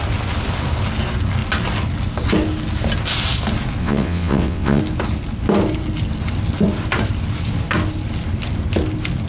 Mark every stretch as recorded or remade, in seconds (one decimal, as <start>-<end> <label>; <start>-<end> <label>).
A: 0.0-3.8 recorded; 3.8-4.8 remade; 4.8-9.3 recorded